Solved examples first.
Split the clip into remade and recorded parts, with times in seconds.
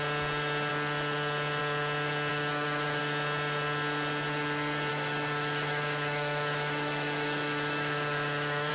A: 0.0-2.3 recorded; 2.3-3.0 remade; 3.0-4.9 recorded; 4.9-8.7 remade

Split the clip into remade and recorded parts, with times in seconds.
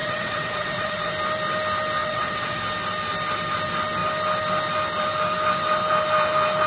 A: 0.0-1.1 remade; 1.1-2.0 recorded; 2.0-2.6 remade; 2.6-6.7 recorded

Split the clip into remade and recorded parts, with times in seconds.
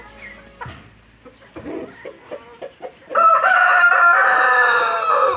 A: 0.0-5.4 recorded